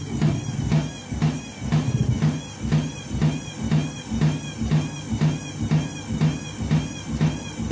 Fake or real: real